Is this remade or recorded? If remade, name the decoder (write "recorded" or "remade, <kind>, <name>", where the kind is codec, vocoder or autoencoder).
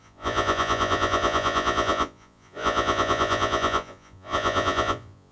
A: remade, vocoder, Vocos